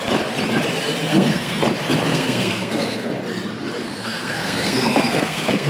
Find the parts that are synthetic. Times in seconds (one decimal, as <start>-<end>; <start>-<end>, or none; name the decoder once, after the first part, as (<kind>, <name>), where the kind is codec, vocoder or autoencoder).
1.1-1.6 (codec, SNAC); 2.1-3.1; 3.8-5.7